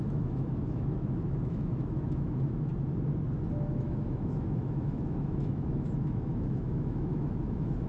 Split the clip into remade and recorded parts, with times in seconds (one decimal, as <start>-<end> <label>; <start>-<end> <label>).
0.0-2.7 remade; 2.7-3.7 recorded; 3.7-7.9 remade